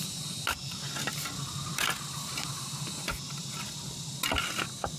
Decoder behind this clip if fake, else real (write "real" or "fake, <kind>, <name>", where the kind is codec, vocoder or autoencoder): real